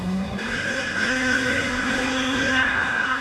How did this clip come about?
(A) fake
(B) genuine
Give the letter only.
A